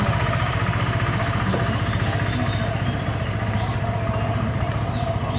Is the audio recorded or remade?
remade